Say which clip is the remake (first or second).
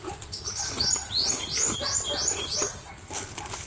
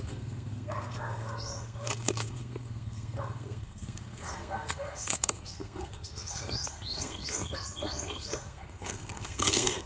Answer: second